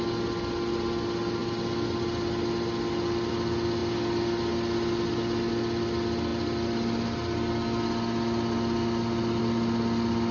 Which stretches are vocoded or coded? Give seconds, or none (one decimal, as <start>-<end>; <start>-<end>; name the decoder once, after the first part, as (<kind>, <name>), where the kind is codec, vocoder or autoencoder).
none